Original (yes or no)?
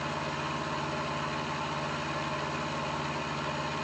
yes